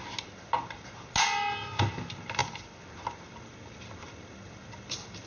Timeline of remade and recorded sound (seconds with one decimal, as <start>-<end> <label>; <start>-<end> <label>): 0.0-5.3 recorded